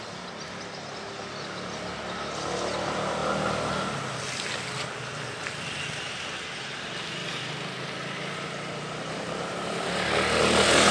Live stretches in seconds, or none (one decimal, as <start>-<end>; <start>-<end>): 0.0-10.9